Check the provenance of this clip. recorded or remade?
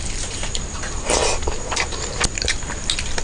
recorded